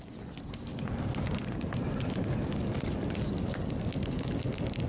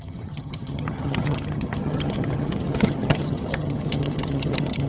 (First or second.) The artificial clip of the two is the second